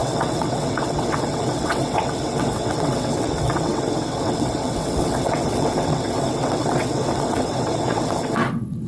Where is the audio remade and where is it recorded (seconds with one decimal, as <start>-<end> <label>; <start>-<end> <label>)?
0.0-8.9 remade

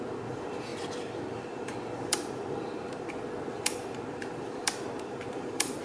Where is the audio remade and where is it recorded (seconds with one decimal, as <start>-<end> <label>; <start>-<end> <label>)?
0.0-2.1 recorded; 2.1-3.1 remade; 3.1-3.5 recorded; 3.5-5.8 remade